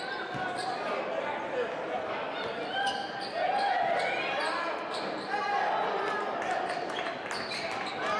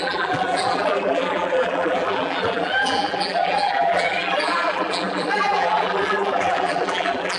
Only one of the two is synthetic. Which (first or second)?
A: second